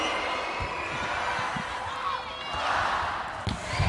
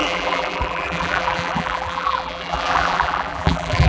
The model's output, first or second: second